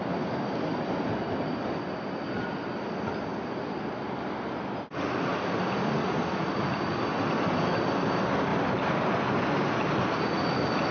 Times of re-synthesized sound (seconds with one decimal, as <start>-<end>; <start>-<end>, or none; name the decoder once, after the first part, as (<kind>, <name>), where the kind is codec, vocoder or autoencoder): none